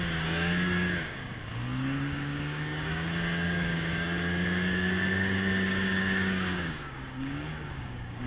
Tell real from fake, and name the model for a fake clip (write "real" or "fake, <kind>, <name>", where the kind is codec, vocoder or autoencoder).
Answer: fake, codec, DAC